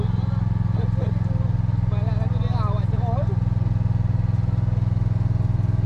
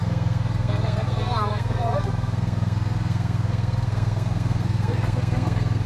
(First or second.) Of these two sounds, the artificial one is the second